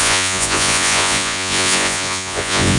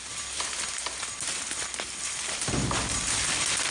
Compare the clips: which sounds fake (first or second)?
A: first